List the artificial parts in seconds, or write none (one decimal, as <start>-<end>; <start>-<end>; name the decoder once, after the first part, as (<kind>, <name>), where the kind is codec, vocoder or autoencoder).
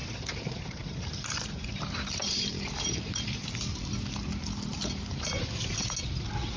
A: 0.0-3.6 (vocoder, BigVGAN v2); 4.7-5.4